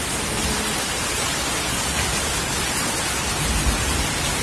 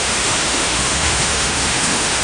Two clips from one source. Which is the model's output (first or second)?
second